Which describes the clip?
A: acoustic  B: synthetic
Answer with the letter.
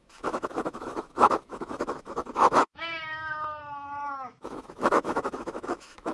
B